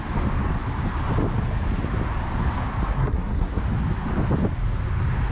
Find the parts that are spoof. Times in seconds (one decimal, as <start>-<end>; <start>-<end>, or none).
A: 2.9-3.6